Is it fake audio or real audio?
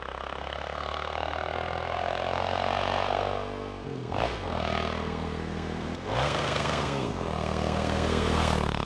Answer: fake